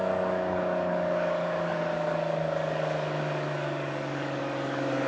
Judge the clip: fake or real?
fake